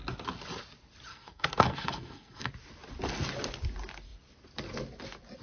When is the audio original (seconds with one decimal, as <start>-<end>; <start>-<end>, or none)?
0.0-1.1; 2.5-5.4